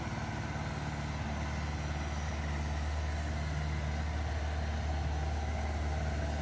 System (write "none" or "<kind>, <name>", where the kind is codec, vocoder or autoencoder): none